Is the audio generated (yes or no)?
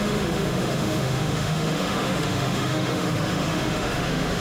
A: yes